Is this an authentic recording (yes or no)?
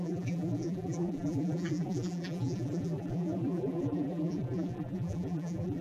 no